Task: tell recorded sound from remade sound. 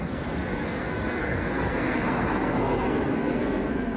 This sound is remade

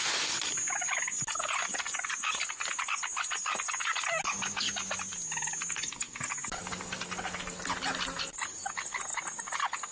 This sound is recorded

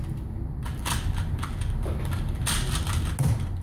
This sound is recorded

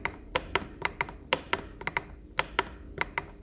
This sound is recorded